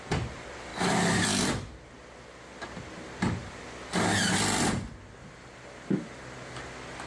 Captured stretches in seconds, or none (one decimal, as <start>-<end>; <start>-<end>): 0.0-7.1